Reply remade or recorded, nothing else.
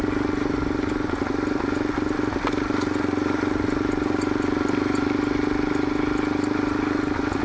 recorded